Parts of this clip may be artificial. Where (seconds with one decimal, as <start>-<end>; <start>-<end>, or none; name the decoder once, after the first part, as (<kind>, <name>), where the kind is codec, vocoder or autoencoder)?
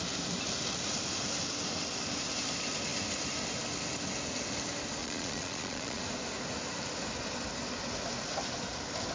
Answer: 5.0-6.0 (vocoder, Vocos)